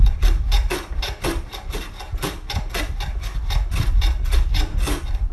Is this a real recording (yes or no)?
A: yes